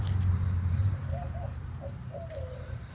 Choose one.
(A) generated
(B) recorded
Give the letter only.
A